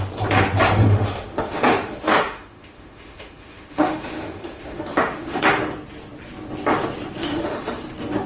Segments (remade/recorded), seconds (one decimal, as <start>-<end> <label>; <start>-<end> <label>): 0.0-0.9 recorded; 0.9-5.4 remade; 5.4-7.2 recorded; 7.2-7.8 remade; 7.8-8.3 recorded